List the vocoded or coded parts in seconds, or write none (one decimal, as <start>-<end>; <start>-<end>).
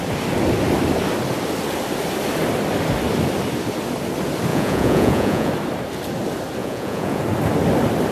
4.5-5.5; 6.6-7.2